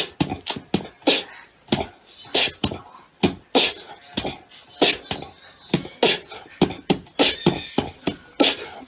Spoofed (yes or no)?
no